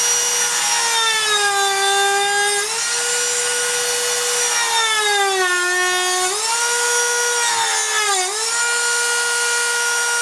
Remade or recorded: recorded